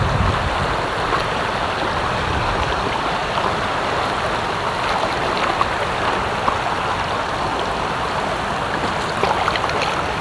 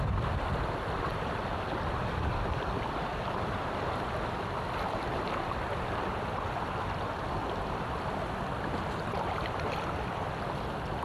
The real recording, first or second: first